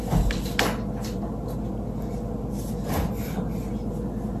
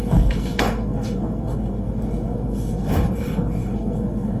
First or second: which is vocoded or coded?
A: second